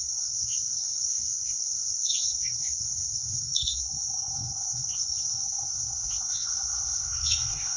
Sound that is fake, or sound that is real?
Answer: fake